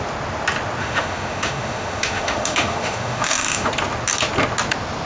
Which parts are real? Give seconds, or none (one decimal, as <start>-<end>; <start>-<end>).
0.0-0.8; 3.7-5.1